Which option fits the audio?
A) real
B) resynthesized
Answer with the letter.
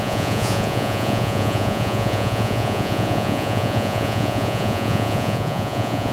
B